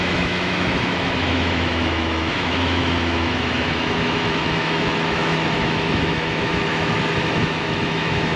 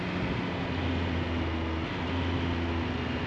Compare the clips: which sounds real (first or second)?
second